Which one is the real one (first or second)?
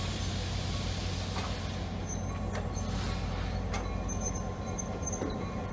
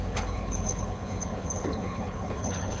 first